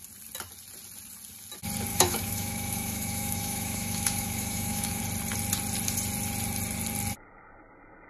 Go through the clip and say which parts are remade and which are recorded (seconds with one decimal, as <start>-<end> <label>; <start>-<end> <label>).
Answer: 0.0-1.9 recorded; 1.9-5.0 remade; 5.0-8.1 recorded